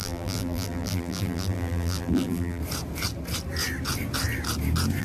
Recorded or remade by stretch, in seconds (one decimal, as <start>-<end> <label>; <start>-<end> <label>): 0.0-2.6 remade; 2.6-5.0 recorded